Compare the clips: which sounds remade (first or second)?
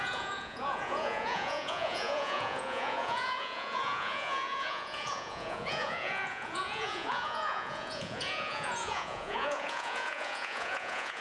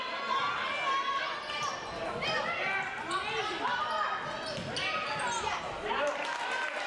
first